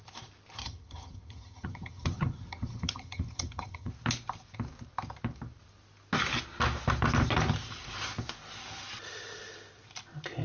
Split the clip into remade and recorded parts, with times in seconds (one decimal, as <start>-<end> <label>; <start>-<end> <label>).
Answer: 0.0-0.6 recorded; 0.6-3.9 remade; 3.9-10.4 recorded